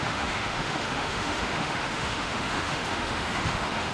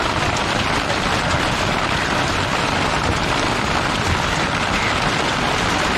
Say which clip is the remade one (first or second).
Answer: first